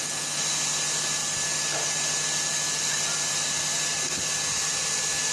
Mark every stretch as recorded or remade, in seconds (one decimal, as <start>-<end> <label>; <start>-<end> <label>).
0.0-5.3 recorded

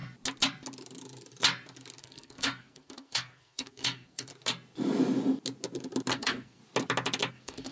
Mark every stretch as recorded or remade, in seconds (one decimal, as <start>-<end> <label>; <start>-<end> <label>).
0.0-2.0 recorded; 2.0-4.3 remade; 4.3-6.1 recorded; 6.1-6.6 remade; 6.6-7.3 recorded; 7.3-7.7 remade

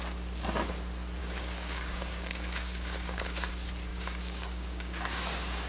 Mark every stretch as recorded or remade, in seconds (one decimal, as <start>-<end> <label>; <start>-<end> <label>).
0.0-1.2 recorded; 1.2-3.5 remade; 3.5-3.9 recorded; 3.9-5.7 remade

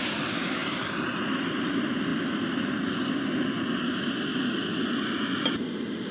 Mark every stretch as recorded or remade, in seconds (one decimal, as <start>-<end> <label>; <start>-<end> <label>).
0.0-6.1 recorded

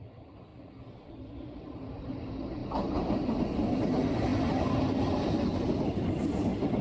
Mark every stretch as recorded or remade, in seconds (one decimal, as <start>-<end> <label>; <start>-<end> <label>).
0.0-6.8 recorded

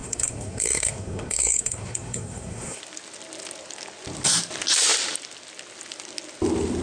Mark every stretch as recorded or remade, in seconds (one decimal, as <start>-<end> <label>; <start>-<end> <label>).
0.0-2.8 remade; 2.8-6.8 recorded

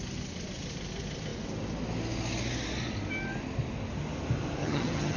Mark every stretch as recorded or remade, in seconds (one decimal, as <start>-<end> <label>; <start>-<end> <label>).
0.0-4.6 recorded; 4.6-5.2 remade

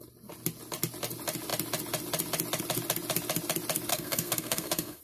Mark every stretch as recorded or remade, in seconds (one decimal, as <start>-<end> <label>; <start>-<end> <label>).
0.0-3.9 recorded; 3.9-5.0 remade